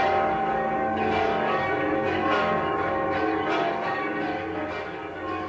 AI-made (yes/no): yes